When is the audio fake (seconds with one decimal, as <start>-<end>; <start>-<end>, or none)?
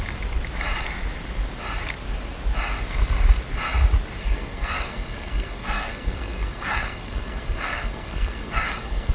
4.2-9.1